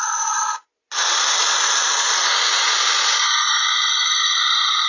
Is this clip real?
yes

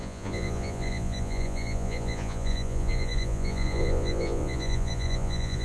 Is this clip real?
no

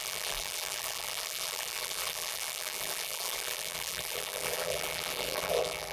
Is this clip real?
no